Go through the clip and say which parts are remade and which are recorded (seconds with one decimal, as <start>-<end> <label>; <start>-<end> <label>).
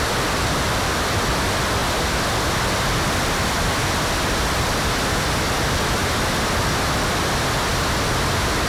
0.0-8.7 recorded